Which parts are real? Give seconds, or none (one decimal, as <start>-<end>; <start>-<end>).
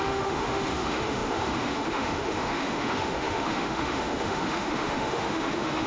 none